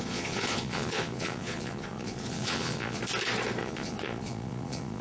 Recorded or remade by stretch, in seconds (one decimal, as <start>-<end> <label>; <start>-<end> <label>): 0.0-3.0 remade; 3.0-3.6 recorded; 3.6-5.0 remade